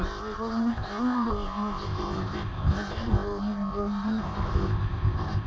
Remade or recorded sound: remade